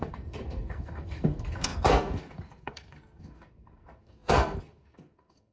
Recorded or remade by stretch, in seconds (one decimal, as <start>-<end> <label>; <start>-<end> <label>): 0.0-5.5 remade